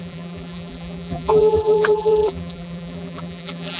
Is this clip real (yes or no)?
no